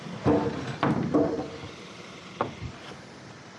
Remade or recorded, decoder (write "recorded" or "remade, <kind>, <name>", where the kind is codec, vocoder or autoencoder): recorded